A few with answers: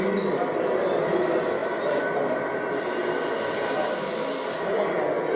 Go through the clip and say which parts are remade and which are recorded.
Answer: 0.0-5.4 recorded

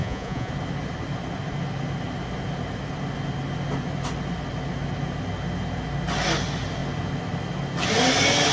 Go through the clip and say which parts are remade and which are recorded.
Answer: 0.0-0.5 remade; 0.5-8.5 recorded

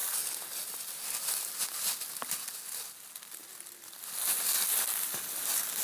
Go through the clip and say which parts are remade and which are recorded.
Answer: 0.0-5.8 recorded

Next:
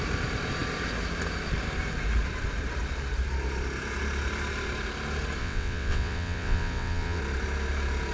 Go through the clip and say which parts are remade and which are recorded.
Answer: 0.0-5.4 recorded; 5.4-7.2 remade; 7.2-8.1 recorded

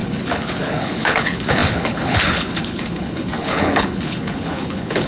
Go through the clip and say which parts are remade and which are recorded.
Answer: 0.0-5.1 remade

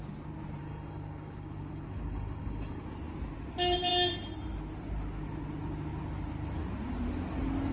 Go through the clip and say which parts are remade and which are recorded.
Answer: 0.0-0.6 recorded; 0.6-2.8 remade; 2.8-7.7 recorded

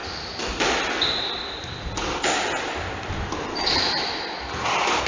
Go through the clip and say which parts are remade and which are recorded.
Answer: 0.0-5.1 recorded

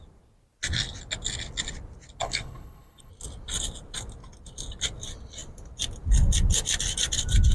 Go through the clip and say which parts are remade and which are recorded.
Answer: 0.0-2.2 recorded; 2.2-3.1 remade; 3.1-7.5 recorded